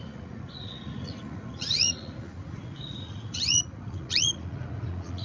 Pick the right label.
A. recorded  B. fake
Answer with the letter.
B